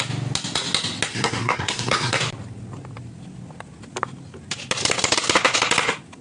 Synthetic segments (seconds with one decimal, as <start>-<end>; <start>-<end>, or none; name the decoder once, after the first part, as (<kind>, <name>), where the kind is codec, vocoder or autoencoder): 1.1-2.2 (codec, SNAC)